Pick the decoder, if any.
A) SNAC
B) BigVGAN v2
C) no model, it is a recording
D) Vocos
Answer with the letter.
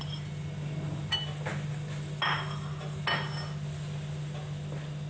C